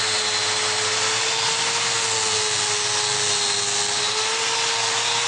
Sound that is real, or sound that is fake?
real